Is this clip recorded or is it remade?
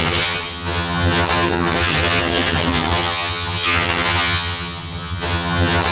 remade